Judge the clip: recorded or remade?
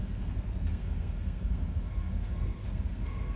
remade